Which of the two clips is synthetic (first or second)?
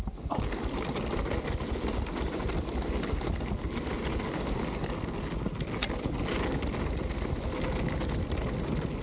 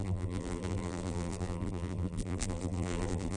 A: second